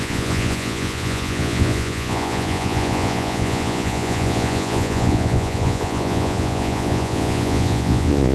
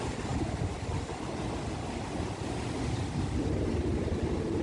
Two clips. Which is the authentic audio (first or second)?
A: second